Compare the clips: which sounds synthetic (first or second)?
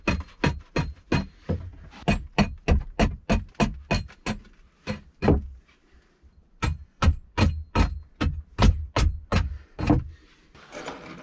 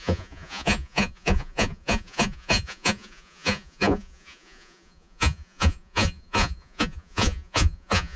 second